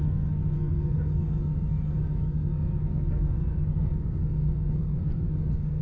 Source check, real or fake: fake